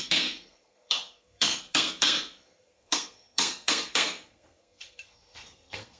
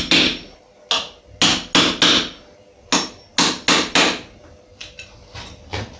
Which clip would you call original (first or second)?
second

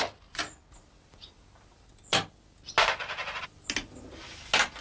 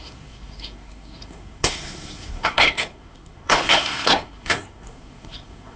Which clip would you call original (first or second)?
first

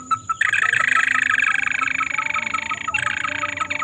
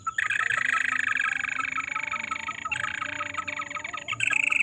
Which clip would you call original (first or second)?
second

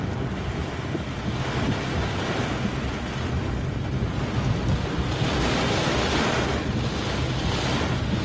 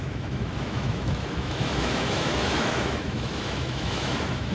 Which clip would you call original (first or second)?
first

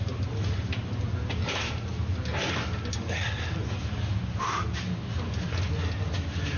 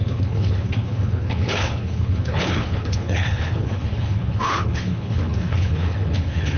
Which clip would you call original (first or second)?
first